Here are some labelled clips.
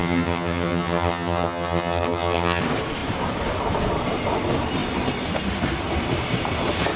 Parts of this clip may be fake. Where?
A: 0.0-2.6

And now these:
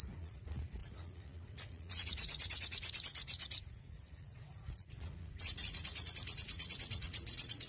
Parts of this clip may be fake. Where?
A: 0.0-7.7

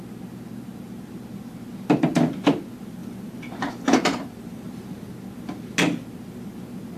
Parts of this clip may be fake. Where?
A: 3.0-5.1

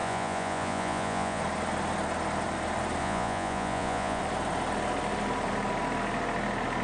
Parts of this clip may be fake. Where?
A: 0.0-1.4; 3.0-4.2

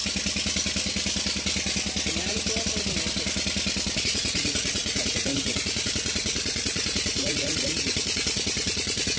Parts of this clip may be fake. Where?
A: 4.0-9.2

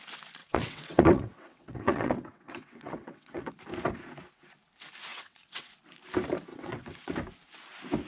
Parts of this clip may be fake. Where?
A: 0.4-3.5; 5.1-5.7; 6.5-7.1